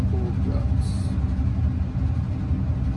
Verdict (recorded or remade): recorded